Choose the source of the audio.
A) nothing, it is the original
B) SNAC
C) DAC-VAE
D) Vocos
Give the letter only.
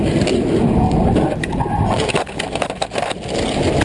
A